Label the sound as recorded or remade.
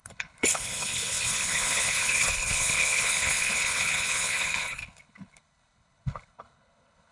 remade